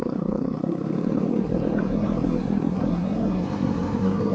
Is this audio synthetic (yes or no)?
yes